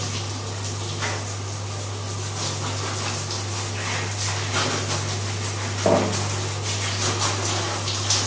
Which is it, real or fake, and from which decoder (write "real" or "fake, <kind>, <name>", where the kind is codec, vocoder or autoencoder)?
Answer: real